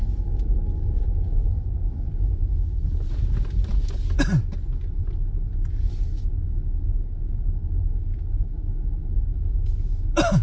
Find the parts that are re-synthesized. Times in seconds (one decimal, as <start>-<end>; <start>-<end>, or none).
9.3-10.0